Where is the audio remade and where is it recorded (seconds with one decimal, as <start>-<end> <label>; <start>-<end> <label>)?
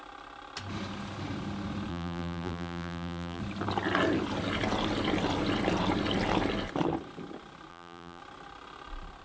0.0-1.9 recorded; 1.9-3.4 remade; 3.4-7.7 recorded; 7.7-8.2 remade; 8.2-9.2 recorded